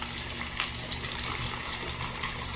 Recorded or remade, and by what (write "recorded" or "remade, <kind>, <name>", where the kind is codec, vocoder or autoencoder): recorded